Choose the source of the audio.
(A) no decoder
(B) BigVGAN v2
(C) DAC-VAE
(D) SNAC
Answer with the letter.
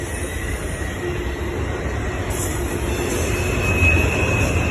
A